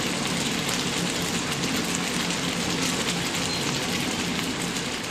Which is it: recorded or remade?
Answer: recorded